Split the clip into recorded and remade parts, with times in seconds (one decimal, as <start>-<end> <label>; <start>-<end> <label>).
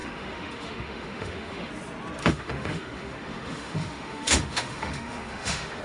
0.0-1.7 remade; 1.7-2.2 recorded; 2.2-5.8 remade